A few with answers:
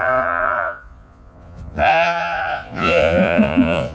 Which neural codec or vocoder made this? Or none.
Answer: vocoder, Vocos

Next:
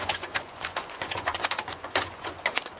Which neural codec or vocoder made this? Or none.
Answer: vocoder, Vocos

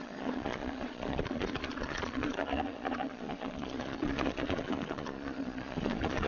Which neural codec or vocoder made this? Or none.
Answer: vocoder, Vocos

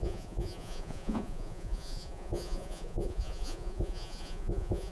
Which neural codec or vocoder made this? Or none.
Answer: vocoder, Vocos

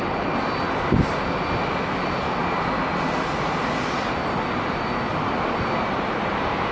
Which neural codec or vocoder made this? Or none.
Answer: none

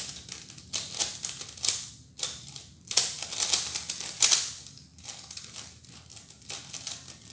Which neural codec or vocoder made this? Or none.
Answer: none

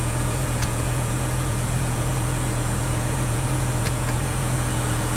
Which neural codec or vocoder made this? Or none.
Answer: vocoder, Vocos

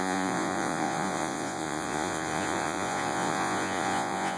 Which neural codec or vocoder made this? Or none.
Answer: vocoder, Vocos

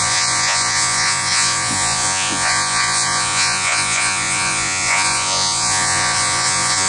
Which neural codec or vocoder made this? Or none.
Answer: vocoder, Vocos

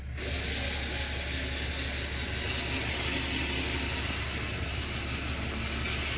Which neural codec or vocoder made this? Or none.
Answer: none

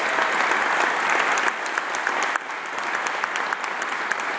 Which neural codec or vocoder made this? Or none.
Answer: none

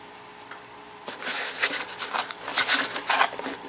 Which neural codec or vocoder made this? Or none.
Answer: none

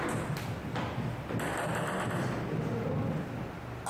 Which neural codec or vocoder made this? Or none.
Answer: none